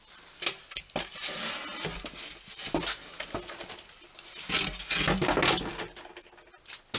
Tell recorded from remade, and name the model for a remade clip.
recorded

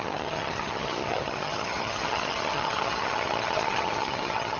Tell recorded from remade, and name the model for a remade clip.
remade, vocoder, HiFi-GAN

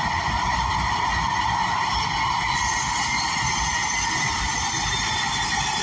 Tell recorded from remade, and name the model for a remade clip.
recorded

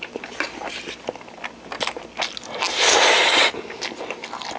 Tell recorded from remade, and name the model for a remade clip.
recorded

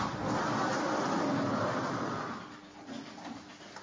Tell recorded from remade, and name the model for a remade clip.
recorded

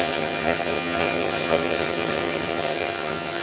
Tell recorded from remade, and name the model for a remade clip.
remade, vocoder, HiFi-GAN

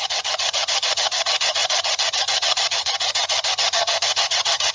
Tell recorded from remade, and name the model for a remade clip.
remade, vocoder, HiFi-GAN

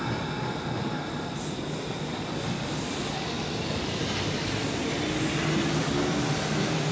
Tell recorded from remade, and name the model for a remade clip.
recorded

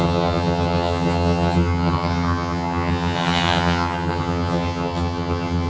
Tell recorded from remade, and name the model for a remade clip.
remade, vocoder, HiFi-GAN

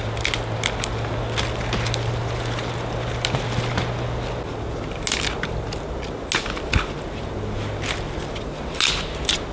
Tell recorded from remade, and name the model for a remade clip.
recorded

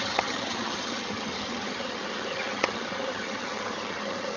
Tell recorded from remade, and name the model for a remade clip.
remade, vocoder, HiFi-GAN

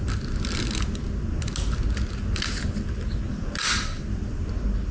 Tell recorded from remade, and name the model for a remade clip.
recorded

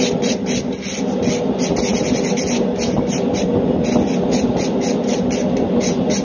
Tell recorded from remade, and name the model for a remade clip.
recorded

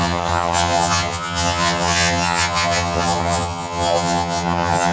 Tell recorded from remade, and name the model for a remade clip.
remade, vocoder, HiFi-GAN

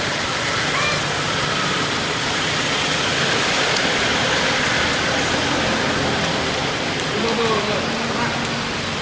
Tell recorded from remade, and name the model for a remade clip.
recorded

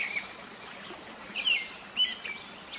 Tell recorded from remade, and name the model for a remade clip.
recorded